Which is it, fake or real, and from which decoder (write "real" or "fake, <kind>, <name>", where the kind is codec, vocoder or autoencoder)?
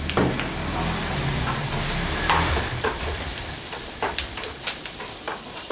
real